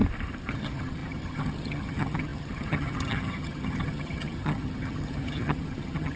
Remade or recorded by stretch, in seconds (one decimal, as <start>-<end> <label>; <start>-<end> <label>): 0.0-0.5 recorded; 0.5-6.2 remade